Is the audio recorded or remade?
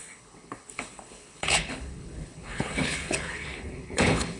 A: remade